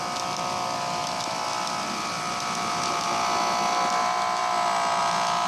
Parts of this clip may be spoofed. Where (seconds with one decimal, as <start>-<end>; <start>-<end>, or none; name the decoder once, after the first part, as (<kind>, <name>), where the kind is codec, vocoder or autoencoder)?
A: none